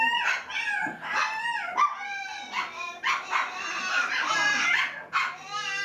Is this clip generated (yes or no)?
no